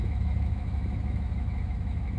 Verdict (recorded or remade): remade